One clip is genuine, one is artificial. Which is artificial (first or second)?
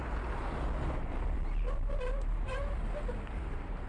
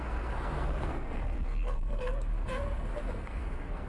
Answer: second